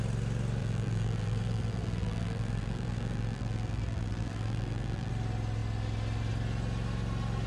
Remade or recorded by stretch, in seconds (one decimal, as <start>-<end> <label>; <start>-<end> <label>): 0.0-0.6 recorded; 0.6-5.1 remade; 5.1-7.5 recorded